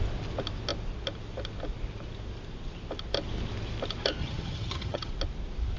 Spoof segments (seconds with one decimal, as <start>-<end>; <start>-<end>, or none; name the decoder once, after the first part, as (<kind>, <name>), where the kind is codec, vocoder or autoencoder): 4.2-5.1 (vocoder, HiFi-GAN)